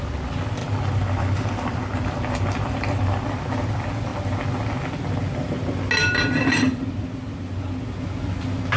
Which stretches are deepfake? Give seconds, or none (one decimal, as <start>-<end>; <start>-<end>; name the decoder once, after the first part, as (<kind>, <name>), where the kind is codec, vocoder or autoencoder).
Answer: 0.6-3.3 (vocoder, BigVGAN v2)